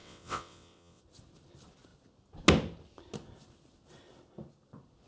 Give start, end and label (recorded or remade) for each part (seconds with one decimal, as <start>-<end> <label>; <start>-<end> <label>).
0.0-1.0 remade; 1.0-5.1 recorded